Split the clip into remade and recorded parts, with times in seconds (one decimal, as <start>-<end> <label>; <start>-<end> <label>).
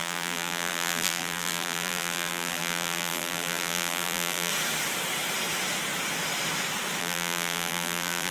0.0-4.5 remade; 4.5-7.0 recorded; 7.0-8.3 remade